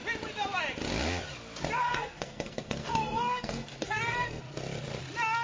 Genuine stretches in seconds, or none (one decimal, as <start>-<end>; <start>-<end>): 0.0-1.9; 4.4-5.4